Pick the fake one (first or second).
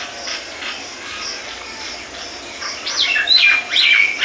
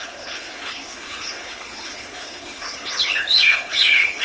second